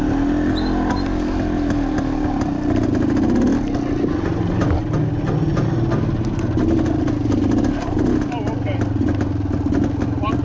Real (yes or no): yes